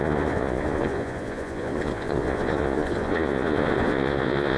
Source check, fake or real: fake